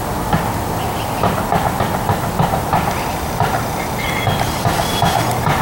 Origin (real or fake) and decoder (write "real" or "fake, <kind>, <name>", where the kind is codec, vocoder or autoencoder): real